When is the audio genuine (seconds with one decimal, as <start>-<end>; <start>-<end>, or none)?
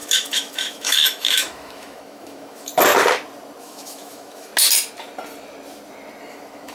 2.7-3.6; 4.5-6.3